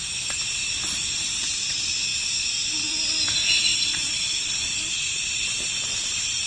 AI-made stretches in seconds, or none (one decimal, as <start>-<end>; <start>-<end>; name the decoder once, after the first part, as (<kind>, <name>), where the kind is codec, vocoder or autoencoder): 3.7-4.4 (vocoder, Vocos)

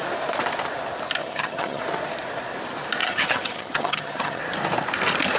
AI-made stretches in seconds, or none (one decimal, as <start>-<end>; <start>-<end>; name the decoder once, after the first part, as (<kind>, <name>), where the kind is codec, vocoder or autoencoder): 1.2-1.8 (vocoder, HiFi-GAN); 3.0-4.4

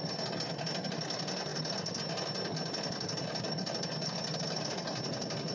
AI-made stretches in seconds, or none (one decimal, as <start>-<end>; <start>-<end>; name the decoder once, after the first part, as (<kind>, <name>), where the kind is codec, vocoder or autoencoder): none